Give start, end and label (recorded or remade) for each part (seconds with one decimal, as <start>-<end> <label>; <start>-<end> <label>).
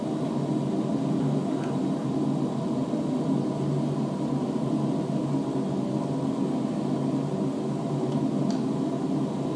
0.0-2.8 recorded; 2.8-5.4 remade; 5.4-9.6 recorded